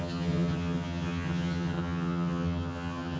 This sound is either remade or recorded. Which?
remade